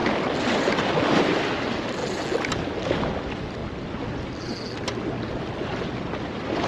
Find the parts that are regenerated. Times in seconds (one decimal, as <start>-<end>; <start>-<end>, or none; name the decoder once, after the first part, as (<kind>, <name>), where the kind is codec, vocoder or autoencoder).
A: none